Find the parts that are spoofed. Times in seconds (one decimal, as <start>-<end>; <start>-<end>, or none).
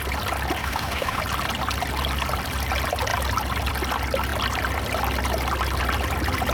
0.6-1.2